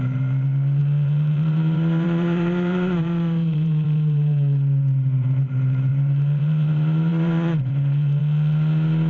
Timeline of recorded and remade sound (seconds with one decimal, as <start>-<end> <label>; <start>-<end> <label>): 0.0-0.8 recorded; 0.8-5.5 remade; 5.5-5.9 recorded; 5.9-8.2 remade; 8.2-9.1 recorded

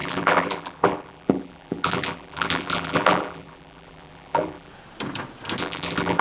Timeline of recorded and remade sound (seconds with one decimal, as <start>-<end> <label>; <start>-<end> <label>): 0.0-4.7 remade; 4.7-5.6 recorded; 5.6-6.2 remade

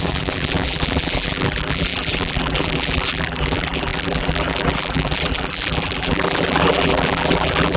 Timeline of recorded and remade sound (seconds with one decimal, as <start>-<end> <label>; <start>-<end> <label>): 0.0-7.8 remade

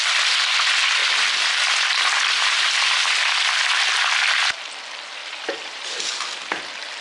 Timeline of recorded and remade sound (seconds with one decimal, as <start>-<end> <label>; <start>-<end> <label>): 0.0-1.0 recorded; 1.0-2.5 remade; 2.5-5.2 recorded; 5.2-6.1 remade; 6.1-7.0 recorded